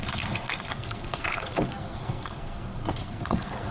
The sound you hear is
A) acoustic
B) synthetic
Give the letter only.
B